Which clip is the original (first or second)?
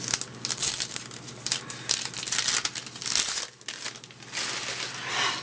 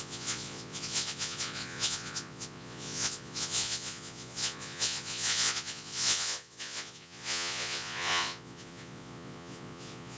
first